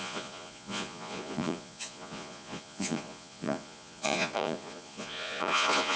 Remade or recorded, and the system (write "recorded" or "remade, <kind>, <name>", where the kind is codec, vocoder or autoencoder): remade, vocoder, Vocos